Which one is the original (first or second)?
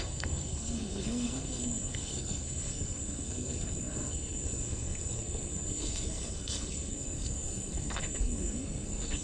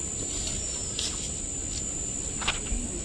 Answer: second